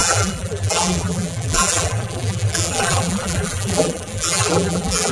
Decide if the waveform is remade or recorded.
remade